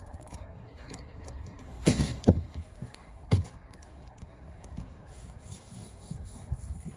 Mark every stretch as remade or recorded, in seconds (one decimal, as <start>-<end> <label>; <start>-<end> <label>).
0.0-7.0 remade